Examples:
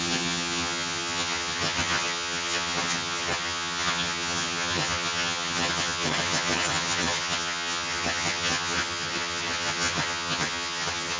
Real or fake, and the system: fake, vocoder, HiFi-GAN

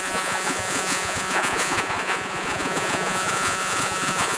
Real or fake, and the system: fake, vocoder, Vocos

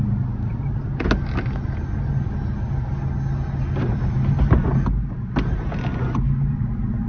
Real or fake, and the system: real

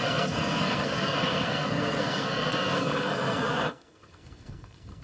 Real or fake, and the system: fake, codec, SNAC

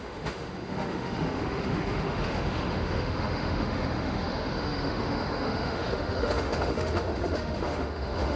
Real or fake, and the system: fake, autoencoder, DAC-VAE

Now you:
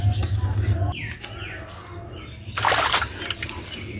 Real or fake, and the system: real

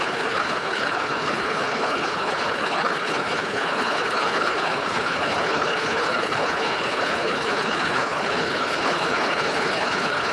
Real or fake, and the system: fake, codec, HILCodec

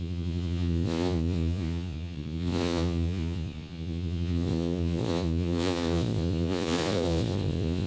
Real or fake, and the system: fake, vocoder, Vocos